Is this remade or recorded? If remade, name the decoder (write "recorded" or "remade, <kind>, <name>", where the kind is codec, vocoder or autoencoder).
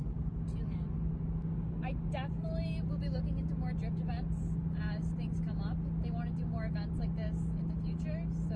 recorded